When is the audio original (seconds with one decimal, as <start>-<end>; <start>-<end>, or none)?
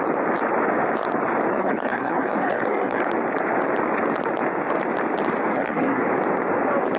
0.0-1.5; 3.0-5.5; 6.0-7.0